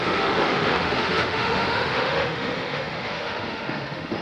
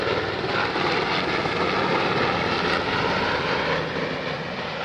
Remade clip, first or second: first